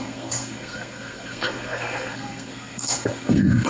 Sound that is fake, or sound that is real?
fake